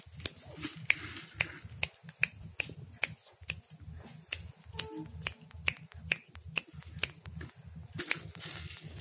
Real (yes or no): yes